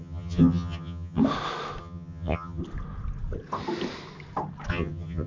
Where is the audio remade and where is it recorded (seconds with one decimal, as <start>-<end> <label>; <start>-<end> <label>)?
0.0-1.2 remade; 1.2-1.8 recorded; 1.8-2.6 remade; 2.6-4.7 recorded; 4.7-5.3 remade